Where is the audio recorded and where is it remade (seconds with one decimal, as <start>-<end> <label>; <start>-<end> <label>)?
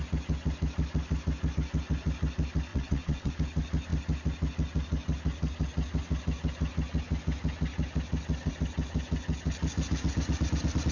0.0-2.7 recorded; 2.7-3.3 remade; 3.3-10.9 recorded